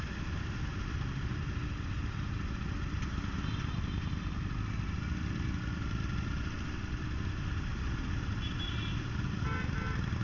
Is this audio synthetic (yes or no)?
no